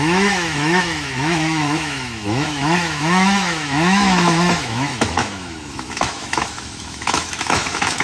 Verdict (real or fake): fake